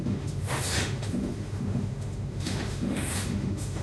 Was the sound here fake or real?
fake